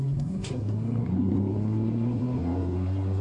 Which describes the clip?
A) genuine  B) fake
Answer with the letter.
B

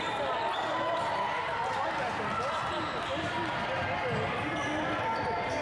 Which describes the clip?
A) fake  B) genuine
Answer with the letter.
B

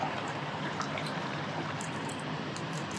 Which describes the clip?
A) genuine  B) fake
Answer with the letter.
B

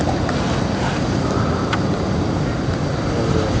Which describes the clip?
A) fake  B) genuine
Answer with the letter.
B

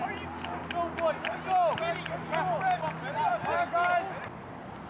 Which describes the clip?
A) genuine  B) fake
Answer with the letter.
A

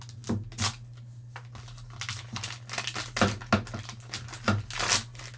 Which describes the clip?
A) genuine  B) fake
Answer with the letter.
A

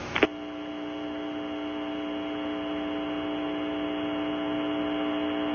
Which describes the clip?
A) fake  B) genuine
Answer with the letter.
B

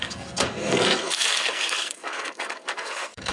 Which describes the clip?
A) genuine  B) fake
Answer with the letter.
B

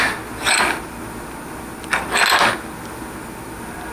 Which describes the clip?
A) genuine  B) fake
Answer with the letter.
A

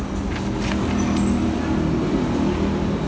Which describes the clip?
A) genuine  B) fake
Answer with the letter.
A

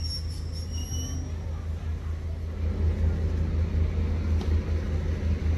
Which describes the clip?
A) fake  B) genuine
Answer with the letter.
B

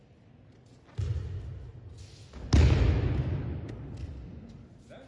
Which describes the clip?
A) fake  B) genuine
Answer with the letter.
B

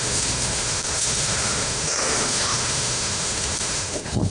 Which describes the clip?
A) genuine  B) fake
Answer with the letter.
B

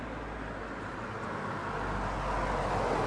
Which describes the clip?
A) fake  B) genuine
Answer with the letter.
B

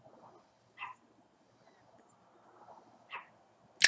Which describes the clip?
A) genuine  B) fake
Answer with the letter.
A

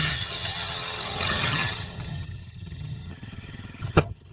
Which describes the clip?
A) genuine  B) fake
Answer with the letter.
B